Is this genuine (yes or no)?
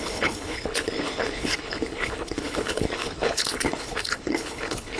no